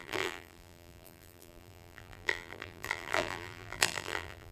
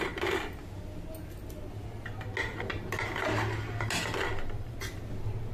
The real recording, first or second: second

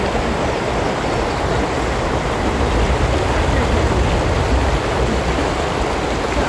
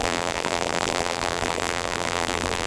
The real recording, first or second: first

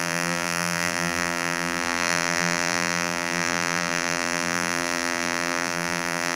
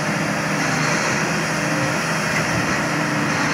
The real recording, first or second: second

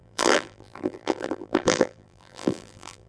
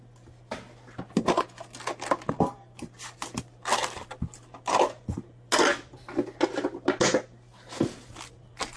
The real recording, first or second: second